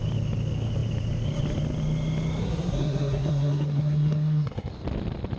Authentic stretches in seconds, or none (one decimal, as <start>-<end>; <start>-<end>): 0.0-2.4; 4.7-5.4